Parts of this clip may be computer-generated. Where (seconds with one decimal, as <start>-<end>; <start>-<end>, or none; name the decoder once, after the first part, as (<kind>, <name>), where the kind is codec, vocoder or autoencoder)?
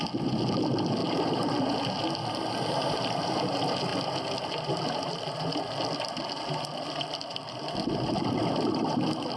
1.0-1.6 (vocoder, BigVGAN v2); 3.9-9.4